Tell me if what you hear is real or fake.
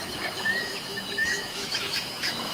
fake